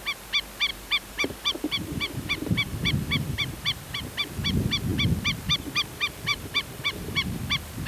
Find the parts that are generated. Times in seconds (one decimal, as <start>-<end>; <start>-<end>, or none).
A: 0.7-4.0; 6.3-7.4